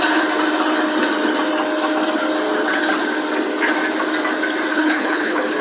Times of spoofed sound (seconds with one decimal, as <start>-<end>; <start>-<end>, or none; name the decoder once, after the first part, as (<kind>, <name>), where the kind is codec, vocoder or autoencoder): 4.7-5.6 (codec, HILCodec)